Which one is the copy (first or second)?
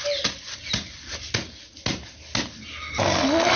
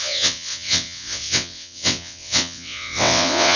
second